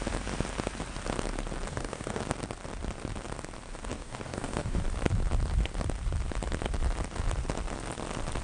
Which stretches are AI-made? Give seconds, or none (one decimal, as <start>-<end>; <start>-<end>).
1.7-2.2; 3.9-4.8